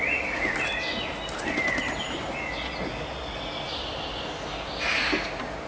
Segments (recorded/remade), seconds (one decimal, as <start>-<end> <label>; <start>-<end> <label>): 0.0-5.7 recorded